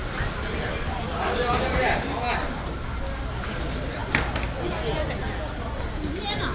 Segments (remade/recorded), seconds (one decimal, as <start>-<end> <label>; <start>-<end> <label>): 0.0-6.5 recorded